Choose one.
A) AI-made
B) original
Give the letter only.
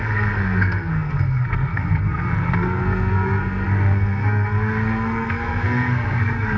A